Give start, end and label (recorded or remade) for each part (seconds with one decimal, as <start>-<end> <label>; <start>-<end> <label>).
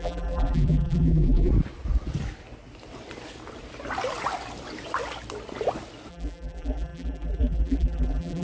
0.0-1.5 remade; 1.5-6.1 recorded; 6.1-8.4 remade